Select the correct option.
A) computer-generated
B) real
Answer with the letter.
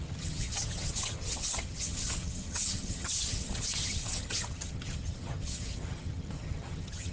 A